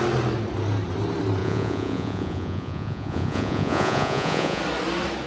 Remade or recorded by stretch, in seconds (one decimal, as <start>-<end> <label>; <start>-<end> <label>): 0.0-1.4 recorded; 1.4-4.6 remade; 4.6-5.3 recorded